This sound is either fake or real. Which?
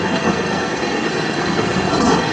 fake